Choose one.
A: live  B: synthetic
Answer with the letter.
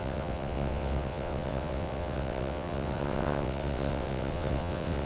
B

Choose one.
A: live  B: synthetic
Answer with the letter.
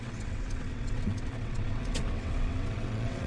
B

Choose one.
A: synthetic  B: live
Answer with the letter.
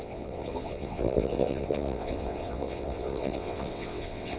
A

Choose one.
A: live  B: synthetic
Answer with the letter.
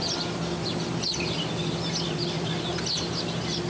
A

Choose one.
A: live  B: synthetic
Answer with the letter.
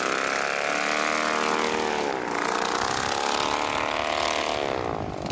A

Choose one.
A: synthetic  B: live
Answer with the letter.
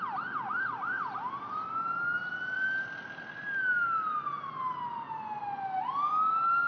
B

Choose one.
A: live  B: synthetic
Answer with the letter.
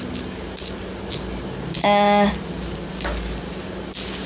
A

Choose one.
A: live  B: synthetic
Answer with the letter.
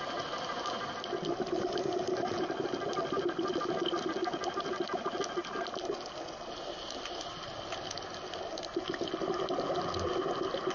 A